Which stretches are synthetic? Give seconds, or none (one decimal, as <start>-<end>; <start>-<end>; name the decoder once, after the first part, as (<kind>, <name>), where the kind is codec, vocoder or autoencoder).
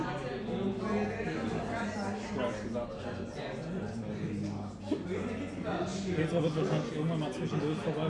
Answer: none